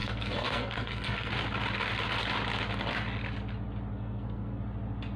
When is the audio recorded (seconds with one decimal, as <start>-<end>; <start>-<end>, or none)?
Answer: 1.3-3.9; 4.6-5.2